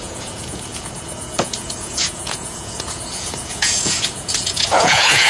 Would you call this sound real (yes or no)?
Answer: no